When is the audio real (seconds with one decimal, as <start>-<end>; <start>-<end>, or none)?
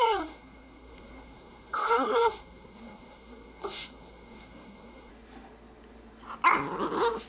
5.1-7.3